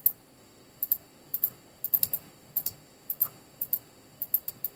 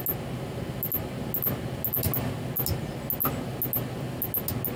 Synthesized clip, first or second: first